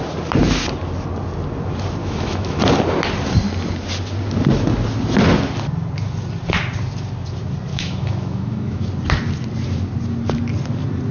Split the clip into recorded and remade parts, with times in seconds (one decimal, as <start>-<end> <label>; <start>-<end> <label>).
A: 0.0-2.0 recorded; 2.0-2.6 remade; 2.6-7.7 recorded; 7.7-8.9 remade; 8.9-11.1 recorded